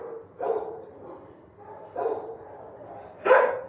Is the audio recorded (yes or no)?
yes